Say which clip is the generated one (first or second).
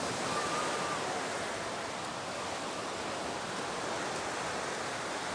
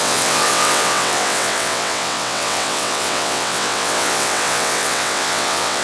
second